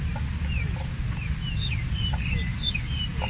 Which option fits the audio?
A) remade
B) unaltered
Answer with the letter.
B